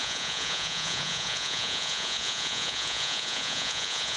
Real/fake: fake